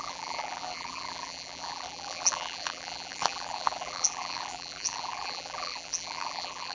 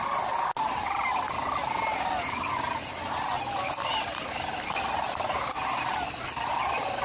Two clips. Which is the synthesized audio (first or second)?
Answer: first